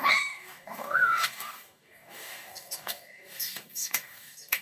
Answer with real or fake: fake